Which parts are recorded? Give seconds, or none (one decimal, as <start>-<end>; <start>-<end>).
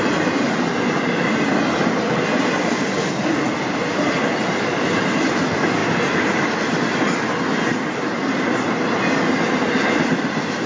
0.0-10.7